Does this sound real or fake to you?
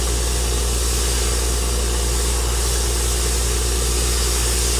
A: real